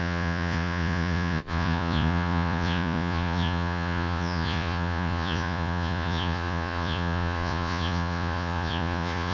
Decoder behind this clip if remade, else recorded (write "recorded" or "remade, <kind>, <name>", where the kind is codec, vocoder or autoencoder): remade, vocoder, Vocos